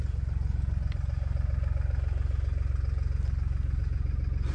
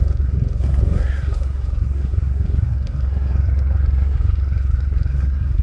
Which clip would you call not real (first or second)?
second